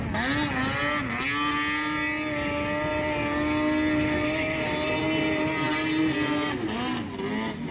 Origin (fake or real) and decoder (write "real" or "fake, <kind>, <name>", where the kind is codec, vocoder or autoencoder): real